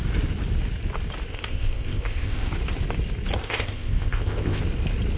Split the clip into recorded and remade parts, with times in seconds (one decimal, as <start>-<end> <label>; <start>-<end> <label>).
0.0-1.3 recorded; 1.3-2.5 remade; 2.5-3.4 recorded; 3.4-4.6 remade; 4.6-5.2 recorded